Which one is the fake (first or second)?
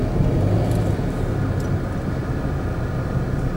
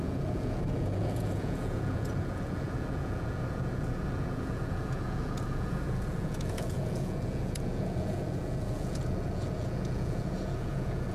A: second